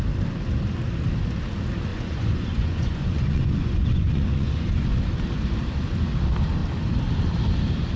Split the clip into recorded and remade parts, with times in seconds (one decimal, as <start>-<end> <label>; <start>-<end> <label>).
0.0-1.9 recorded; 1.9-5.1 remade; 5.1-8.0 recorded